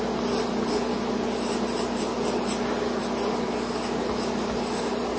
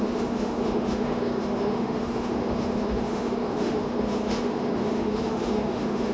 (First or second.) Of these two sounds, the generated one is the second